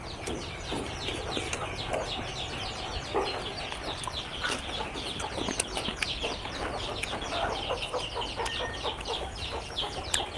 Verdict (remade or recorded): recorded